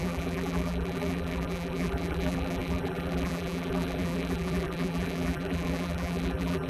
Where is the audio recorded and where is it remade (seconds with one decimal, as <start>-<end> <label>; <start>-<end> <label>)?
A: 0.0-6.7 remade